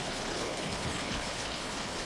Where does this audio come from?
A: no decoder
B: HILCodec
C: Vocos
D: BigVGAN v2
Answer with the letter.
B